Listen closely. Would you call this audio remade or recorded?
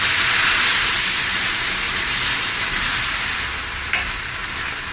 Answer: remade